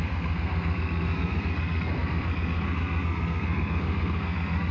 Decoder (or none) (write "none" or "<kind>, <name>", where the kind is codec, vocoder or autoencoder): codec, SNAC